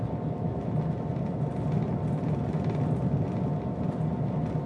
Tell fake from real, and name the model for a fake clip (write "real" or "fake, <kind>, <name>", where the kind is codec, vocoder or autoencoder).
real